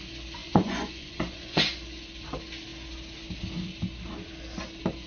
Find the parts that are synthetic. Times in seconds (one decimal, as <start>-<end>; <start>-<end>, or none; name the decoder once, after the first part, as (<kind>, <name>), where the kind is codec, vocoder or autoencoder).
0.4-2.0 (vocoder, Vocos)